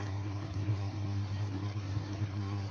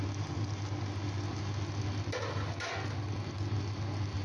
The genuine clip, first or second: second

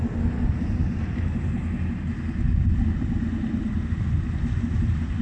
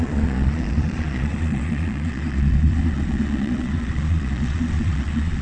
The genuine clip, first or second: first